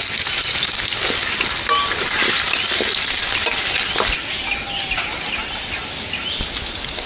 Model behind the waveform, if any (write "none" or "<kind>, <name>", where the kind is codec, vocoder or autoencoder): none